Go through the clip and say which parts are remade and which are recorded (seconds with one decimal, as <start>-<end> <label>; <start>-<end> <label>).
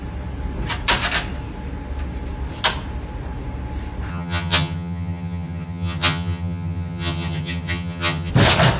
0.0-4.1 recorded; 4.1-8.3 remade; 8.3-8.8 recorded